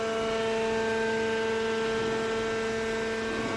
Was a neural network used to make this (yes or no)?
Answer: no